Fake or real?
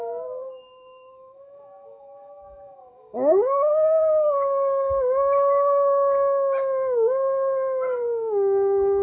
fake